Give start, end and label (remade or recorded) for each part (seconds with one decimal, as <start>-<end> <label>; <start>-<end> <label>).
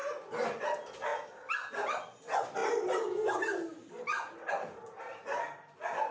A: 0.0-6.1 recorded